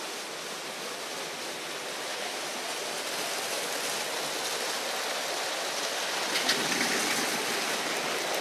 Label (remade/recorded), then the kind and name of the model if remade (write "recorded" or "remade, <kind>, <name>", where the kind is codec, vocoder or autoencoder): recorded